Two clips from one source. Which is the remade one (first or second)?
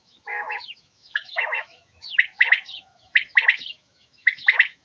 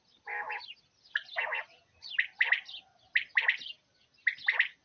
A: first